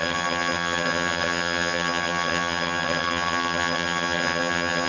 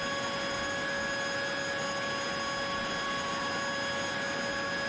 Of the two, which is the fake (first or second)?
first